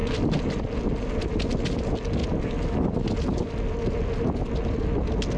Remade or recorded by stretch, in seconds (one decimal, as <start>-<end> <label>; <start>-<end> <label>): 0.0-0.6 remade; 0.6-5.4 recorded